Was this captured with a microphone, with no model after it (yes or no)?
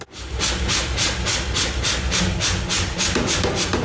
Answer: yes